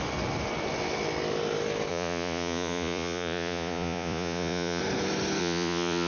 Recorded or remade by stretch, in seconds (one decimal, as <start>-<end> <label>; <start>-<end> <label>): 0.0-1.9 recorded; 1.9-4.8 remade; 4.8-5.4 recorded; 5.4-6.1 remade